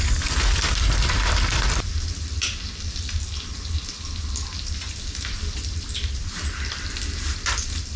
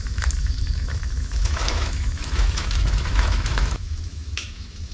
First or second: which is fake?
second